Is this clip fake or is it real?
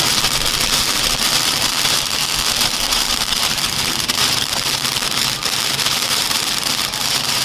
fake